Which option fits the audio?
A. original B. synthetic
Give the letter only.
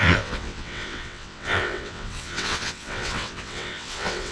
B